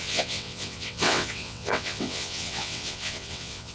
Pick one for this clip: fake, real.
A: fake